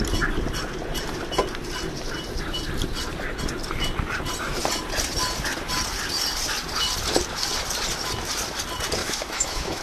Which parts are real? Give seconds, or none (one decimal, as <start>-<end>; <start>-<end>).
0.0-9.0